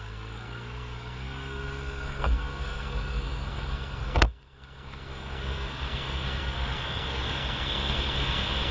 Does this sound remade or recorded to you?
remade